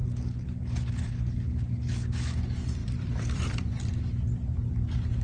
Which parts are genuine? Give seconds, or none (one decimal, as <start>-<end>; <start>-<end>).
0.0-2.8; 3.9-5.2